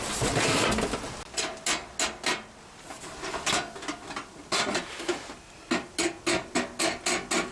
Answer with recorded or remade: recorded